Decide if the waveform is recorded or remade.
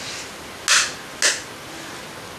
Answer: recorded